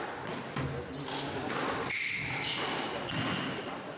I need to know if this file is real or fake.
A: real